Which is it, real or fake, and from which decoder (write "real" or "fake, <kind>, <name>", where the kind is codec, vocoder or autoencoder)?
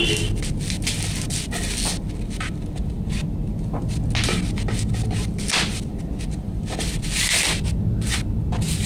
real